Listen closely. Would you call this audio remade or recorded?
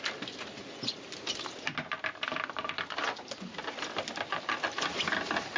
recorded